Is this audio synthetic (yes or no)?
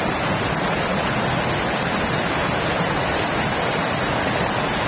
no